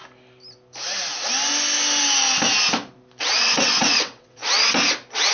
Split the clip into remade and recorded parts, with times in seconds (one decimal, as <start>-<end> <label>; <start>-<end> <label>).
0.0-3.2 recorded; 3.2-4.4 remade; 4.4-5.3 recorded